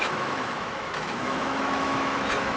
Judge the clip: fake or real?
fake